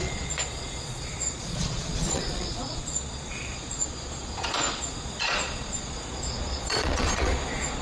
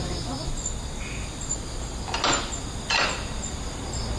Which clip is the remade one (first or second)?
first